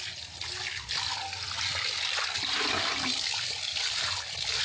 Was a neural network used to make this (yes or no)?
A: no